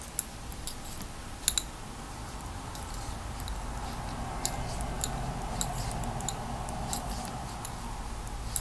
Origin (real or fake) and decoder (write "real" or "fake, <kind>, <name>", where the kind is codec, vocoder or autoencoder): real